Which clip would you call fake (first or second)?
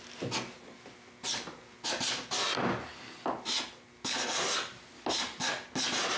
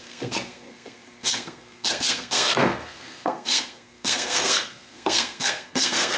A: second